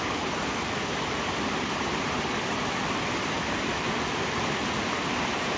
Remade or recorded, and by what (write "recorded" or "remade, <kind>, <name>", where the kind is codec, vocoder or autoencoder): recorded